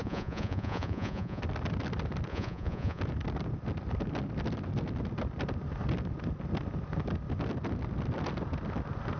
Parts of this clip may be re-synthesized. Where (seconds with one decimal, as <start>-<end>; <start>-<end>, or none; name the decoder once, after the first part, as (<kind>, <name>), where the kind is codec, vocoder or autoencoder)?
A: 0.0-1.4 (vocoder, Vocos); 2.3-3.0